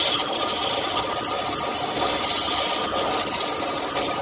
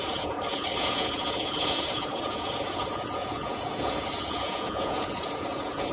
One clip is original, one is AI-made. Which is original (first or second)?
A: first